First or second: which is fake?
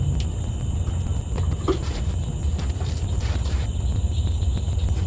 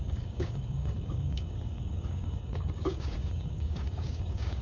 second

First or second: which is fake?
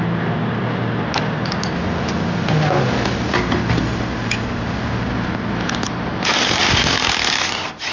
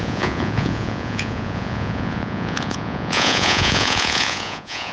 second